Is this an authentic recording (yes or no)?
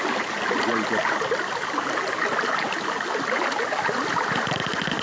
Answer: yes